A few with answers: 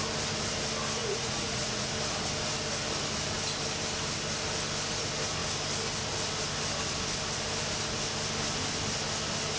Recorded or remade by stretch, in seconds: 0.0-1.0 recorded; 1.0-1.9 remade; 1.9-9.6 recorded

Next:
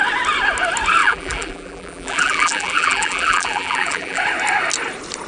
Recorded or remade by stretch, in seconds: 0.0-1.0 recorded; 1.0-4.2 remade; 4.2-5.3 recorded

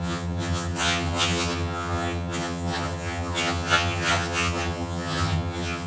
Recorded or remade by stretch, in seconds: 0.0-5.9 remade

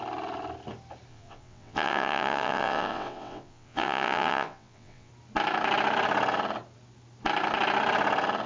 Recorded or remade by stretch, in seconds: 0.0-1.1 recorded; 1.1-5.1 remade; 5.1-8.5 recorded

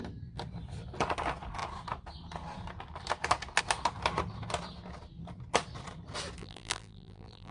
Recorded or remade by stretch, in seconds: 0.0-6.4 recorded; 6.4-7.5 remade

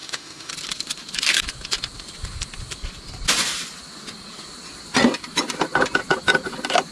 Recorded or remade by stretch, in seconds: 0.0-0.5 remade; 0.5-6.9 recorded